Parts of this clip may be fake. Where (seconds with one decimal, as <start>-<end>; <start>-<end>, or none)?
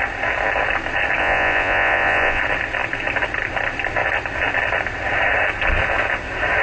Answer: 1.2-2.4